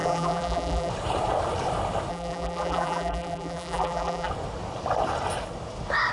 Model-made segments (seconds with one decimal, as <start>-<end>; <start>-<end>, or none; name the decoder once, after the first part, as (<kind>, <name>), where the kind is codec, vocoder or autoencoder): 0.0-0.9 (vocoder, BigVGAN v2); 2.1-4.3